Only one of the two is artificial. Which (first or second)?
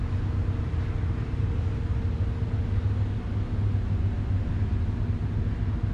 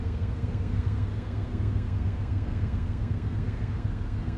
second